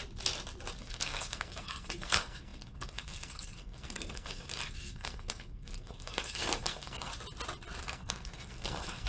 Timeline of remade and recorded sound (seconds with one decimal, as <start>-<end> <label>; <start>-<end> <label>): 0.0-0.8 recorded; 0.8-7.1 remade; 7.1-7.8 recorded; 7.8-9.1 remade